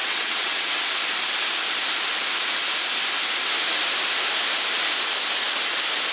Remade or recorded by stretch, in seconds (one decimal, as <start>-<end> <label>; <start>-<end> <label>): 0.0-0.7 remade; 0.7-6.1 recorded